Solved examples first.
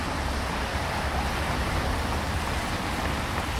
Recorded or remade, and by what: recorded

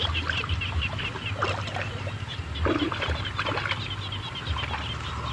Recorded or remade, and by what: recorded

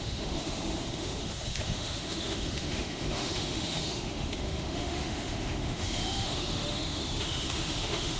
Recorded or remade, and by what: remade, autoencoder, DAC-VAE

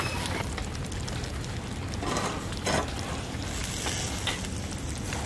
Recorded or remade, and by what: recorded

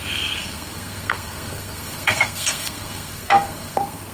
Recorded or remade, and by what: remade, codec, SNAC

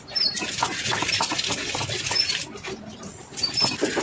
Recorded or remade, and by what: recorded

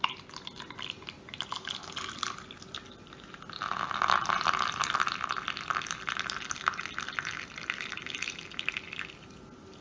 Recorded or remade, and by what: recorded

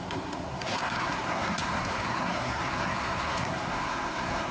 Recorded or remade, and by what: remade, codec, SNAC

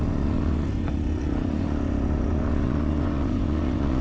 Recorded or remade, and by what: remade, vocoder, Vocos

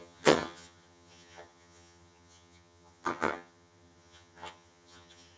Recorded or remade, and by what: remade, vocoder, HiFi-GAN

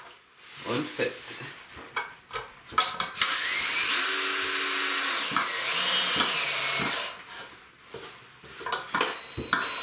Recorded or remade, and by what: recorded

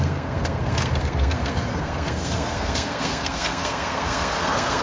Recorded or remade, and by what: remade, codec, SNAC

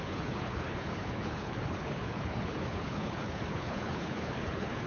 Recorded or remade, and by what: remade, codec, HILCodec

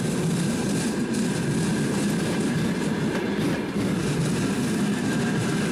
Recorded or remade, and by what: recorded